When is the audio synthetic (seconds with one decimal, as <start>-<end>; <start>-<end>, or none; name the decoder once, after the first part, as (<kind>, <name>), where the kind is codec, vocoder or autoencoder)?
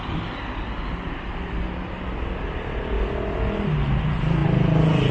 none